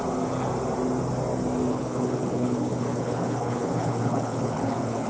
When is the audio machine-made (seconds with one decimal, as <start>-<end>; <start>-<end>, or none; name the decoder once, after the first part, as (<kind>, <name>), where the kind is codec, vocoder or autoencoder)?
1.7-5.1 (codec, HILCodec)